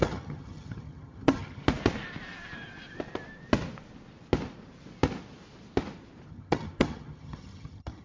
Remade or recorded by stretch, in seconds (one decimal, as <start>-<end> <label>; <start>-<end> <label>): 0.0-1.6 remade; 1.6-6.3 recorded; 6.3-8.0 remade